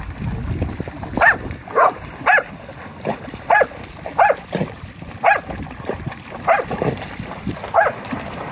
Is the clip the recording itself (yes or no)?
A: no